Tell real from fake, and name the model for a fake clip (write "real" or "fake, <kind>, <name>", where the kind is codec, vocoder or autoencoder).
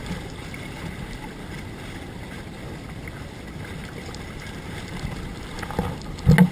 real